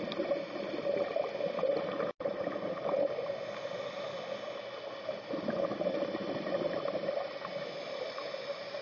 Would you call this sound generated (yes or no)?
no